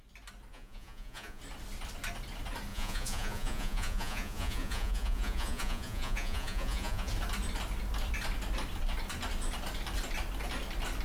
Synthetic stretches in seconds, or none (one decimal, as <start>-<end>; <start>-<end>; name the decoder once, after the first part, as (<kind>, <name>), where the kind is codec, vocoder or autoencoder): 0.5-1.4 (vocoder, Vocos); 2.7-7.1